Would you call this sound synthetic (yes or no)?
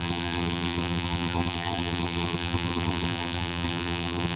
yes